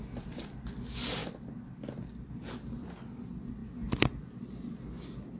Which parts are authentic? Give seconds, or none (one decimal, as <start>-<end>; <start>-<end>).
0.0-5.4